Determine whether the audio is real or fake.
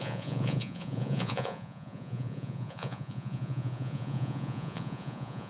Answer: fake